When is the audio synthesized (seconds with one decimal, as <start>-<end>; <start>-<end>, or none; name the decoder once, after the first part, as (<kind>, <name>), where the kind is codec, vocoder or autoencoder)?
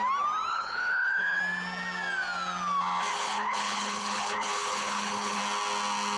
0.5-1.4 (codec, HILCodec); 3.1-5.4